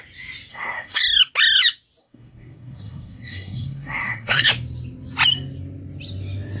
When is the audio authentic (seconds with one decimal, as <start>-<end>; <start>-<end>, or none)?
0.0-0.5; 1.0-2.0; 4.5-6.6